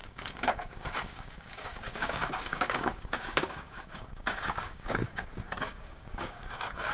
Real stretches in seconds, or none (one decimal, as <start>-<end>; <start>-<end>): none